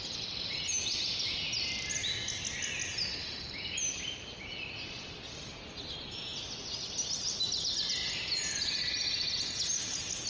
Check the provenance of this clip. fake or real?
real